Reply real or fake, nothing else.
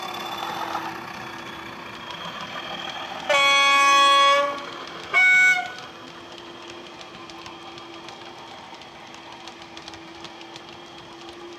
real